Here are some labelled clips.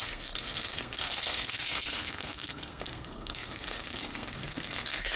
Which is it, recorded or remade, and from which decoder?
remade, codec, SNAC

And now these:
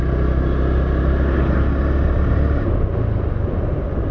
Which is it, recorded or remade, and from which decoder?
recorded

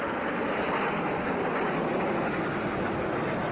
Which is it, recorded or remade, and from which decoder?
recorded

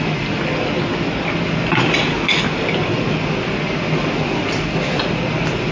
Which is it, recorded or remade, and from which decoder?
recorded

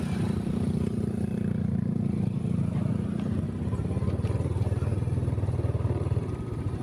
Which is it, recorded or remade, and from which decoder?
remade, vocoder, BigVGAN v2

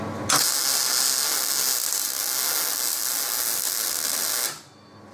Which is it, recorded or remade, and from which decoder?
recorded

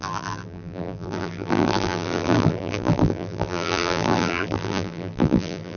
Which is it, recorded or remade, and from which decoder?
remade, vocoder, BigVGAN v2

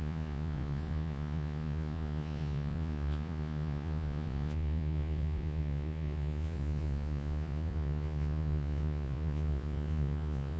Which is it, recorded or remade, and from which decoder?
remade, vocoder, Vocos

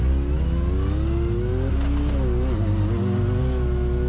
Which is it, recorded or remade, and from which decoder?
recorded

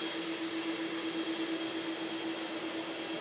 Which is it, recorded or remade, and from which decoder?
recorded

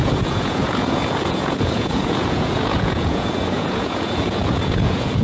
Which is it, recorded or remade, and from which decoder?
remade, vocoder, Vocos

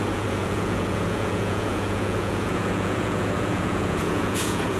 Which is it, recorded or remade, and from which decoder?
remade, vocoder, Vocos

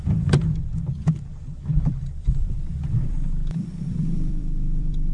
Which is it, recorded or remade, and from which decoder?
remade, vocoder, BigVGAN v2